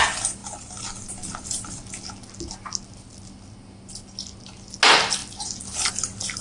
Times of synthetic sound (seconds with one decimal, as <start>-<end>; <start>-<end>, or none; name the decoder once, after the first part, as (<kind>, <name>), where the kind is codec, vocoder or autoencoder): none